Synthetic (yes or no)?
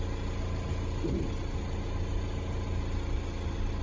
no